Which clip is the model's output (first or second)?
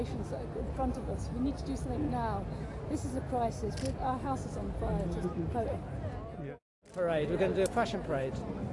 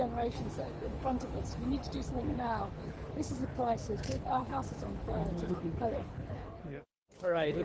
second